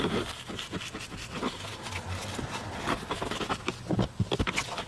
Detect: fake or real real